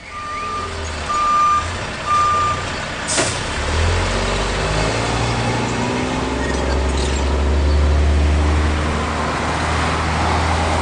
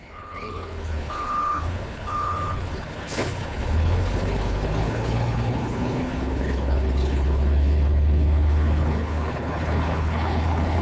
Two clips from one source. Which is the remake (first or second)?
second